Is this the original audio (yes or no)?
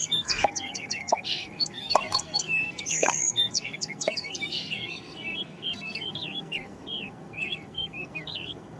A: no